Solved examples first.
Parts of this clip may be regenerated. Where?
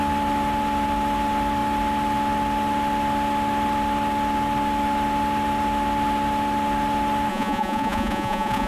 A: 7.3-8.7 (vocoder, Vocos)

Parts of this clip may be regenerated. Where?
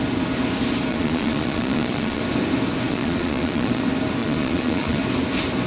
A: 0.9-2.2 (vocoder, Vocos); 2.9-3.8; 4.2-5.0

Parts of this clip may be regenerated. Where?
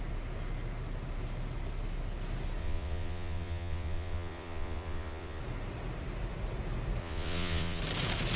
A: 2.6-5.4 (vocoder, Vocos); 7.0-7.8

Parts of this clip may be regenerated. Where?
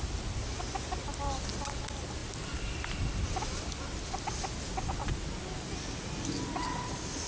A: none